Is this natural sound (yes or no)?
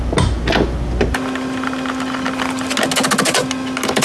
yes